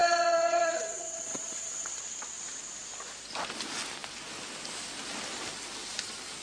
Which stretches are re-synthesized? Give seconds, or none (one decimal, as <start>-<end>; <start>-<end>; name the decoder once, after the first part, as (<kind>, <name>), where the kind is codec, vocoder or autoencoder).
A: 0.0-2.0 (vocoder, WaveNeXt)